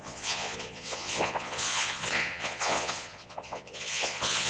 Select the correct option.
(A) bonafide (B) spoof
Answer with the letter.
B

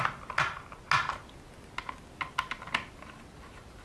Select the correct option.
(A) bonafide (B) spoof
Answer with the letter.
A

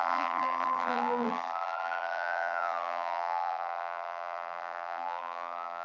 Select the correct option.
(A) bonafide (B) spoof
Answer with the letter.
B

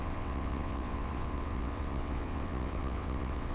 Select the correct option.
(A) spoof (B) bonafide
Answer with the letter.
A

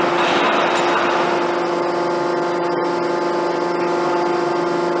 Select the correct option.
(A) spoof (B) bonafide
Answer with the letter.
B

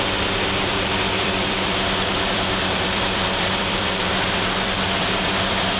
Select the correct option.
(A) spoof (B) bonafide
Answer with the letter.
A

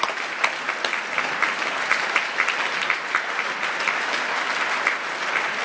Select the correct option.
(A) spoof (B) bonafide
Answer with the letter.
B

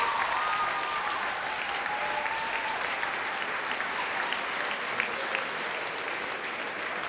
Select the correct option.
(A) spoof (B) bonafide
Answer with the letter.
B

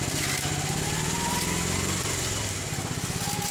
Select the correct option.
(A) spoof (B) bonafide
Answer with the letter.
A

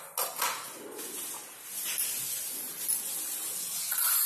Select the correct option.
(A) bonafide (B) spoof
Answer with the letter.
A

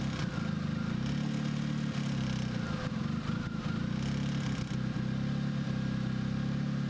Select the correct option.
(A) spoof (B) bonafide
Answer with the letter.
B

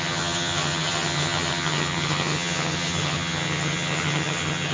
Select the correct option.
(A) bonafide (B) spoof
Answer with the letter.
B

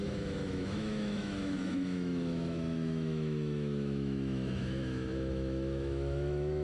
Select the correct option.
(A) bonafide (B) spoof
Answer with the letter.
B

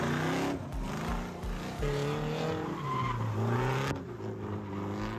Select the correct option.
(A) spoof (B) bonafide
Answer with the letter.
B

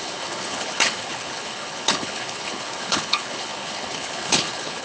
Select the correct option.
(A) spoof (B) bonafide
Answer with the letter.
A